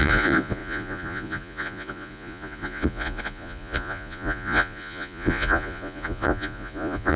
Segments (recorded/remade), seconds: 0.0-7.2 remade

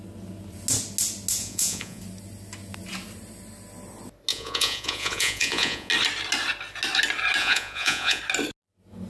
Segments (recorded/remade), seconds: 0.0-1.4 recorded; 1.4-2.0 remade; 2.0-4.3 recorded; 4.3-5.9 remade; 5.9-7.4 recorded; 7.4-8.2 remade; 8.2-9.1 recorded

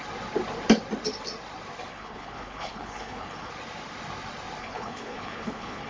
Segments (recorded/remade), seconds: 0.0-1.9 recorded; 1.9-3.5 remade; 3.5-4.6 recorded; 4.6-5.9 remade

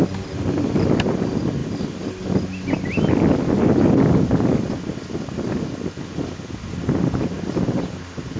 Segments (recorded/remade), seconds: 0.0-8.4 recorded

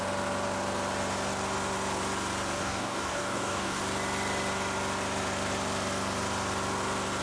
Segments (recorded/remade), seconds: 0.0-2.6 recorded; 2.6-3.8 remade; 3.8-7.2 recorded